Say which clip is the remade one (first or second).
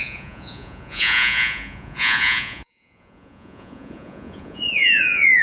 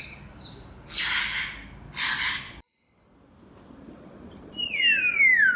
first